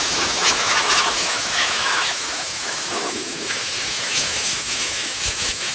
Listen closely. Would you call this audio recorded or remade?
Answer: remade